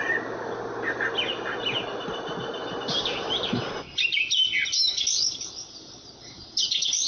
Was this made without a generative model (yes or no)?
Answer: yes